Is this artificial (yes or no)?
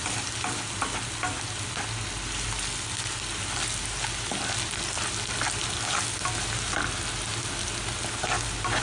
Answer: no